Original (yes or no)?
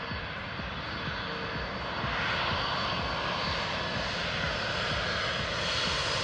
yes